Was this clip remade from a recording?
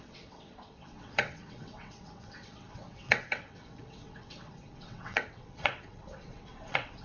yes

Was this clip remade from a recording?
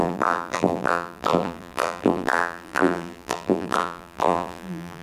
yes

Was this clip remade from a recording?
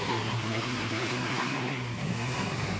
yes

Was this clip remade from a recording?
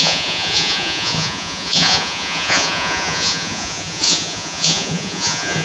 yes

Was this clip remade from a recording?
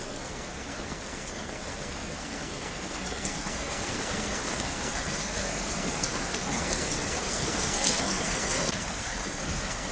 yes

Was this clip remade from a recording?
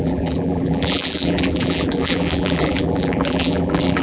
yes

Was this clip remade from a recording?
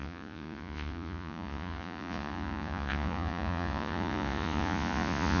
yes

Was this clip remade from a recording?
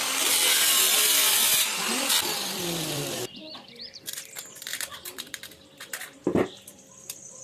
yes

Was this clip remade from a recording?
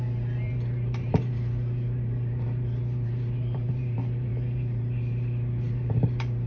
yes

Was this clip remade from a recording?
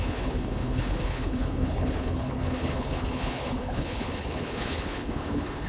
yes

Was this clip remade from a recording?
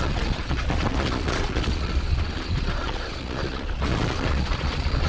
yes